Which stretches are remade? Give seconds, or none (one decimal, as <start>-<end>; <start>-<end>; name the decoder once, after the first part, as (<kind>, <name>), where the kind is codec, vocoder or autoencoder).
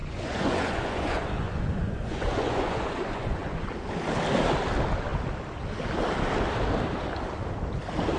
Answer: 0.0-3.7 (vocoder, Vocos)